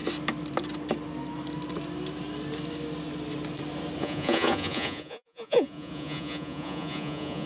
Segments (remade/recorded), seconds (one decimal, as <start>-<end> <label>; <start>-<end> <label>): 0.0-4.0 recorded; 4.0-7.5 remade